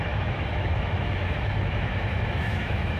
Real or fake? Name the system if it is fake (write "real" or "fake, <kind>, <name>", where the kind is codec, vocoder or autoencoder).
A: fake, autoencoder, DAC-VAE